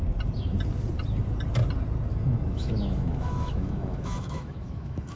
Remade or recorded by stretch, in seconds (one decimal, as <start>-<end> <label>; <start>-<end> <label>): 0.0-2.1 recorded; 2.1-5.2 remade